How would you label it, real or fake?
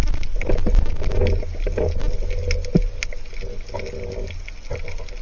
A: real